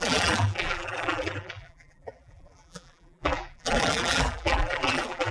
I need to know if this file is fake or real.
fake